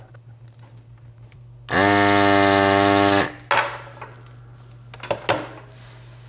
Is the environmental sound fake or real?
real